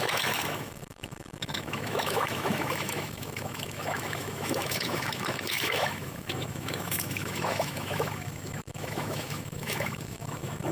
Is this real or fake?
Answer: fake